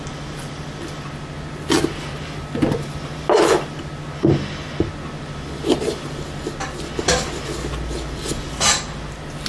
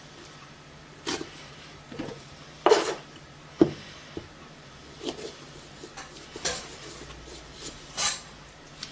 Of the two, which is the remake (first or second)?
second